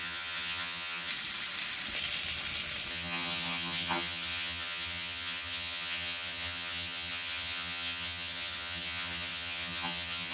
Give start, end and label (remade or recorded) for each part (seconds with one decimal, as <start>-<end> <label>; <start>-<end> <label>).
0.0-1.1 remade; 1.1-2.9 recorded; 2.9-10.3 remade